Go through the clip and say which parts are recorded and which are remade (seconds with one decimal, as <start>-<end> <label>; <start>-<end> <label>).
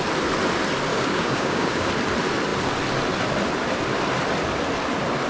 0.0-0.9 recorded; 0.9-1.9 remade; 1.9-5.3 recorded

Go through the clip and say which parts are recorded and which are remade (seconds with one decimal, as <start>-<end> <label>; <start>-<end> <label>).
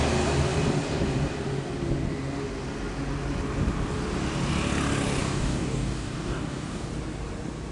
0.0-5.2 recorded; 5.2-6.9 remade; 6.9-7.7 recorded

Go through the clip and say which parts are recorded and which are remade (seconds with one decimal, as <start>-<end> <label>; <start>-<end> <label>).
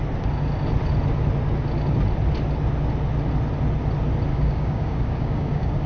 0.0-4.3 recorded; 4.3-5.9 remade